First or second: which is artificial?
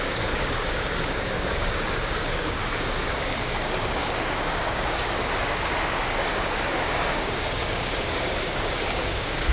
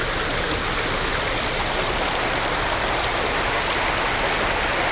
first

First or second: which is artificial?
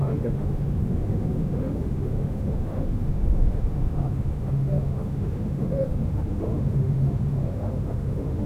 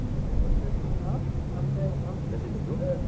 first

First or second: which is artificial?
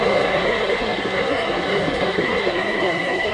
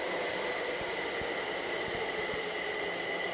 first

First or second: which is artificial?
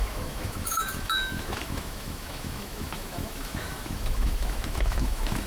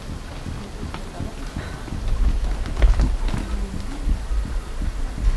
first